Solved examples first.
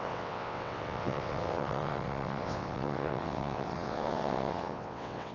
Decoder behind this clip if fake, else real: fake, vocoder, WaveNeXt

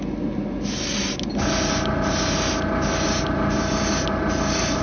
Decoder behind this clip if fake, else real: real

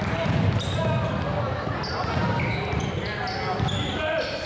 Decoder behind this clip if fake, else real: real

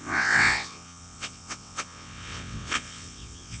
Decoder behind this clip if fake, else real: fake, vocoder, WaveNeXt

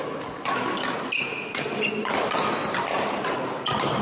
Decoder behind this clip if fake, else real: real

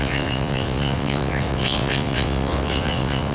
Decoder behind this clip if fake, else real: fake, vocoder, WaveNeXt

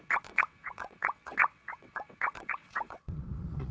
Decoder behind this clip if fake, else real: fake, vocoder, WaveNeXt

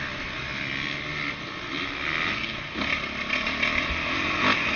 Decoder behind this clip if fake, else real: real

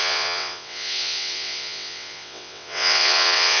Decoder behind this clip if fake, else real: fake, vocoder, WaveNeXt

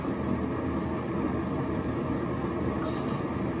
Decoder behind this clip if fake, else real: real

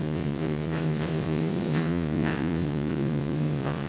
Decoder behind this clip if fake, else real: fake, vocoder, WaveNeXt